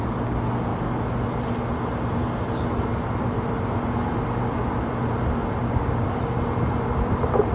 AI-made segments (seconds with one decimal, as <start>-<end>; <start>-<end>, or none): 5.6-6.2

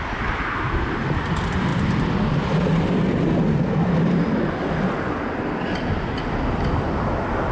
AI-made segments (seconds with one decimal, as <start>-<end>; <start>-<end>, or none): none

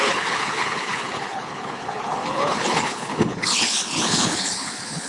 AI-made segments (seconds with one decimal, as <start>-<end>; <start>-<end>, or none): 0.0-5.1